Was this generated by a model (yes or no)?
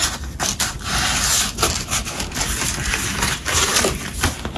no